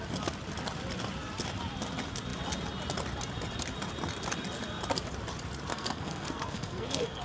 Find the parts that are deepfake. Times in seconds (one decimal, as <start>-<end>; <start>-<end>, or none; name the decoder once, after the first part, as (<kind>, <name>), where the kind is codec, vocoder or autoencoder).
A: 5.7-7.2 (codec, SNAC)